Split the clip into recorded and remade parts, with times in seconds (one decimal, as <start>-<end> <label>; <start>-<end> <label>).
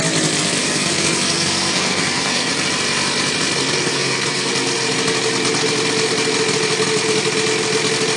0.0-0.6 recorded; 0.6-2.5 remade; 2.5-3.9 recorded; 3.9-4.5 remade; 4.5-8.2 recorded